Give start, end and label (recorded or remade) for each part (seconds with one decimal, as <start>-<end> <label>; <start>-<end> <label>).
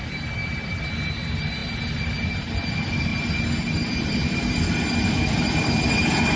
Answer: 0.0-6.4 recorded